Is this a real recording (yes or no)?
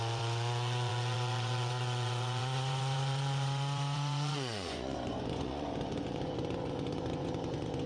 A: no